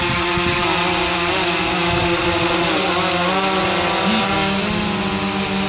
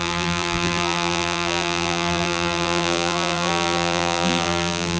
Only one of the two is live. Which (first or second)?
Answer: first